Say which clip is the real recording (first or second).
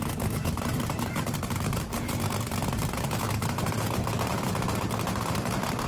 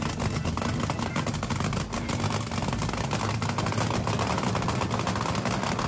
second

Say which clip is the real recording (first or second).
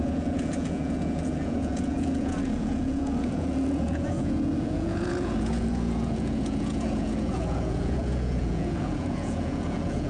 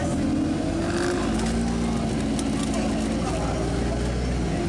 second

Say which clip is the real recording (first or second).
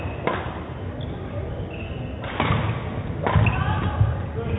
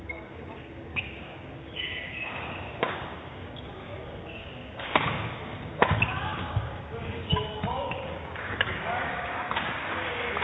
first